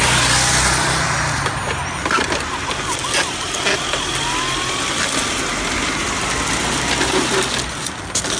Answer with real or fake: real